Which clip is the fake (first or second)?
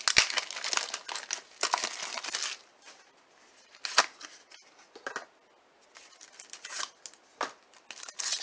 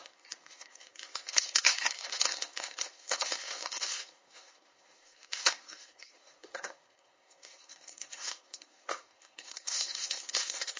second